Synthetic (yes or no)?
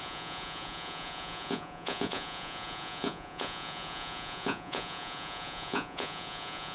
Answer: yes